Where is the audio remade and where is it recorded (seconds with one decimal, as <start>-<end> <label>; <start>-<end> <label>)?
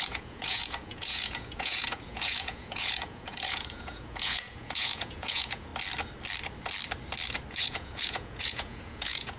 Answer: 0.0-5.7 remade; 5.7-7.5 recorded; 7.5-9.4 remade